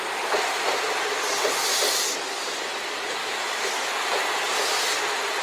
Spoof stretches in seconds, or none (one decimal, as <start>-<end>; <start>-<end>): 3.2-3.9